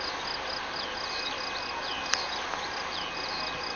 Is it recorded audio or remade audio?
recorded